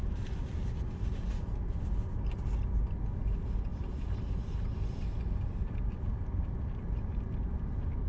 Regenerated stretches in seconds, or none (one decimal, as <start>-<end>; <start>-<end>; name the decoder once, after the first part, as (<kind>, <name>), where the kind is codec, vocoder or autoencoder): none